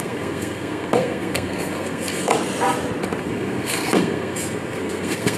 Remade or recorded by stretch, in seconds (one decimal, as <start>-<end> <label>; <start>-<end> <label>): 0.0-2.3 remade; 2.3-3.2 recorded; 3.2-5.4 remade